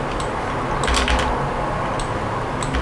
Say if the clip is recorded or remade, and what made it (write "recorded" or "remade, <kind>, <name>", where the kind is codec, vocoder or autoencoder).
recorded